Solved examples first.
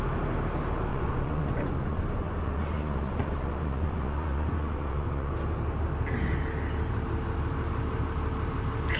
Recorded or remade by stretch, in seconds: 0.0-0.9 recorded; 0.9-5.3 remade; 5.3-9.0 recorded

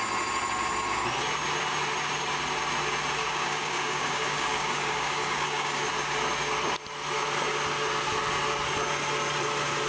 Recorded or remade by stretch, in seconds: 0.0-3.2 recorded; 3.2-5.9 remade; 5.9-9.9 recorded

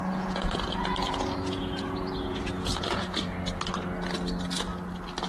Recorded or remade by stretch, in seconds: 0.0-3.2 remade; 3.2-5.3 recorded

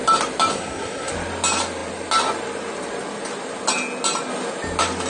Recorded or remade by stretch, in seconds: 0.0-0.5 recorded; 0.5-1.1 remade; 1.1-5.1 recorded